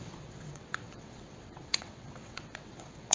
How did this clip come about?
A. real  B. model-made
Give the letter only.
B